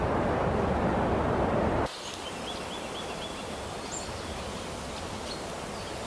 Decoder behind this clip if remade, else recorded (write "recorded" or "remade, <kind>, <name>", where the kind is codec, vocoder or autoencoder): recorded